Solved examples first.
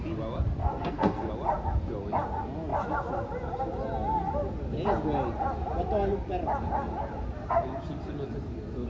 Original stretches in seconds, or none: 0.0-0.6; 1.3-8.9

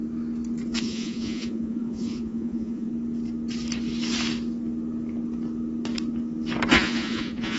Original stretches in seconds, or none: 0.0-0.8; 2.9-6.7